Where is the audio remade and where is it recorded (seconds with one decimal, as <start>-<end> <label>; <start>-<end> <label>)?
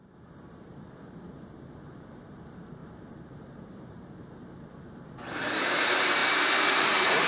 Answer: 0.0-7.3 remade